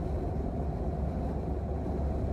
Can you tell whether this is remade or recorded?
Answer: recorded